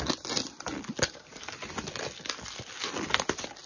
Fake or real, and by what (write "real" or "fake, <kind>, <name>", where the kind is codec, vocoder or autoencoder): real